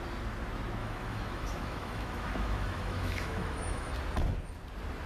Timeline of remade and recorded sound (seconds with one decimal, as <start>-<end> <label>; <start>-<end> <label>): 0.0-0.8 recorded; 0.8-3.9 remade; 3.9-5.1 recorded